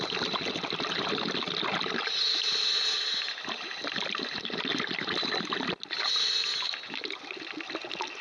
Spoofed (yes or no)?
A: no